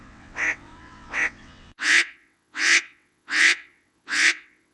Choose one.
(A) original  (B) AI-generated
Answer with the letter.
B